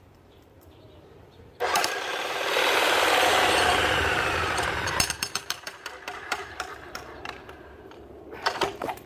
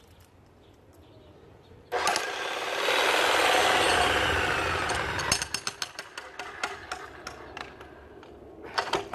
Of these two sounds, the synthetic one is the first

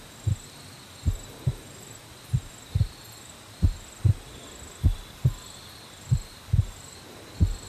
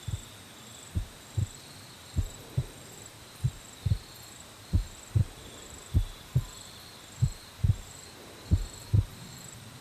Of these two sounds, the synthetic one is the second